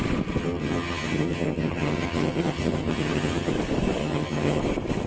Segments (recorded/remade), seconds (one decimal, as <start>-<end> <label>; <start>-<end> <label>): 0.0-0.4 recorded; 0.4-3.5 remade; 3.5-4.0 recorded; 4.0-4.6 remade; 4.6-5.1 recorded